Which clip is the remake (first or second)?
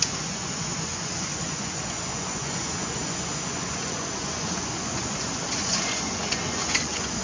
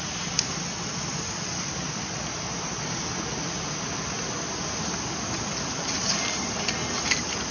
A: first